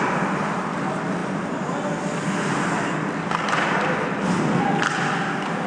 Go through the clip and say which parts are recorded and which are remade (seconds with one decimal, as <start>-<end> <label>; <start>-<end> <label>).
0.0-5.7 recorded